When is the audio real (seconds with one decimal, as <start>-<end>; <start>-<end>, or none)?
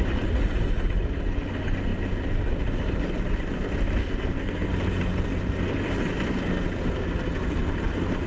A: 0.0-4.0; 4.7-8.3